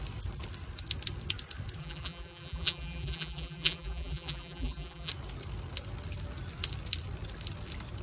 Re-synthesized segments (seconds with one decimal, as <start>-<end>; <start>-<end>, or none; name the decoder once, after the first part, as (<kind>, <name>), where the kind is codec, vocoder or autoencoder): 1.8-5.1 (vocoder, BigVGAN v2)